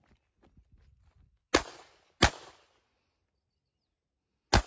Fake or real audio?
real